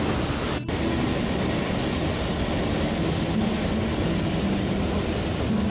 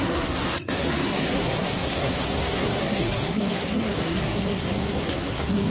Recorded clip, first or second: first